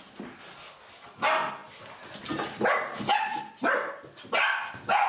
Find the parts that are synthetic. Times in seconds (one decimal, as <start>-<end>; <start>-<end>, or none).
none